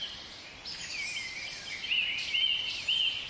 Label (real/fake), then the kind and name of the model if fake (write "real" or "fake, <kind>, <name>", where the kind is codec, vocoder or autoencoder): real